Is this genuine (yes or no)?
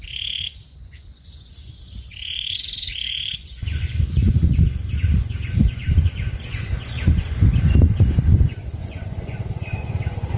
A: no